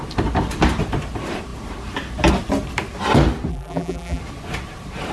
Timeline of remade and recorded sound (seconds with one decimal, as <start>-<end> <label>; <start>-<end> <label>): 0.0-3.5 recorded; 3.5-4.2 remade; 4.2-5.1 recorded